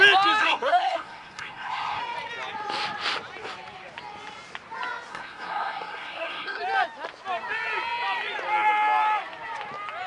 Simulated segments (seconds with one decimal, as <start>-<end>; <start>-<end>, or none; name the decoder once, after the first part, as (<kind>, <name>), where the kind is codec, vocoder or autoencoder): 0.4-2.0 (codec, SNAC); 5.1-6.6